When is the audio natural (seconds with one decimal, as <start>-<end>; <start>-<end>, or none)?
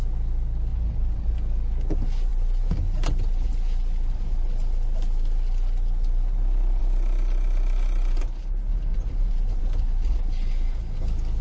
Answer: 0.0-0.7; 1.3-8.9; 9.6-11.4